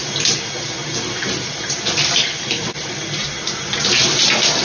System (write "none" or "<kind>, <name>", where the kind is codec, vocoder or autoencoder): none